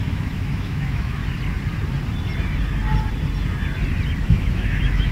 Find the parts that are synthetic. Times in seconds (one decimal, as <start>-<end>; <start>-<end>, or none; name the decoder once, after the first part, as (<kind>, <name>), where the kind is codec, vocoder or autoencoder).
0.0-1.2 (autoencoder, DAC-VAE); 4.2-5.1